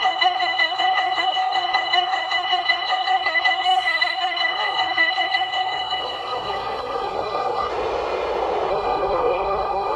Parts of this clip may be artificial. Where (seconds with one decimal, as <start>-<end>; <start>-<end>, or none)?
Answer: 0.0-7.7; 8.7-10.0